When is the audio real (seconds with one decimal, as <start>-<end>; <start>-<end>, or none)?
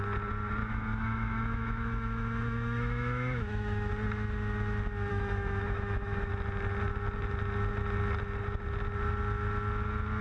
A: 0.0-0.6; 3.9-5.1; 6.3-10.2